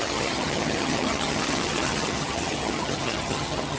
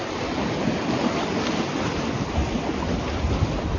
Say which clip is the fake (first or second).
first